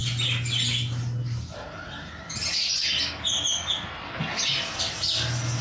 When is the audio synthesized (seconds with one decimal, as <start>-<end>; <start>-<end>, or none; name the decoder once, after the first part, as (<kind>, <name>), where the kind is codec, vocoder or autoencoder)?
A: none